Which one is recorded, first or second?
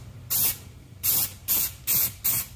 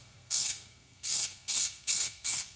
first